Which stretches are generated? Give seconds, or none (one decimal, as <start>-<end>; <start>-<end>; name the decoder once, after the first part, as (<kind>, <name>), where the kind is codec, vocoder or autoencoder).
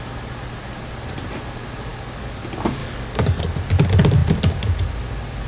1.9-2.4 (codec, DAC); 2.8-3.4